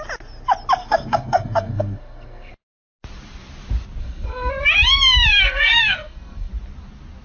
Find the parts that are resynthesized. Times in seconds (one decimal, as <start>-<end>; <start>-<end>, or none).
0.8-2.5; 4.0-4.5; 5.3-6.5